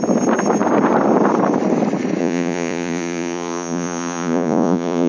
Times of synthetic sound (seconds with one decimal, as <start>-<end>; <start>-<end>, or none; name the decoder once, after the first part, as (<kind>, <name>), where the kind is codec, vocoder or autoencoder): 2.2-5.1 (vocoder, Vocos)